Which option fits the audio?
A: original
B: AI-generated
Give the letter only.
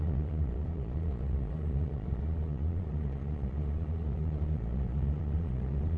B